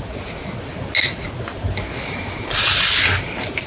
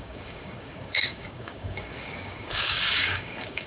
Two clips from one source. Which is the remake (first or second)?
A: second